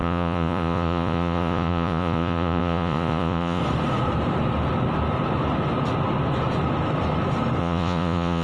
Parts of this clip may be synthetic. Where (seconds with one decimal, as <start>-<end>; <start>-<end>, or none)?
0.0-3.6; 7.6-8.4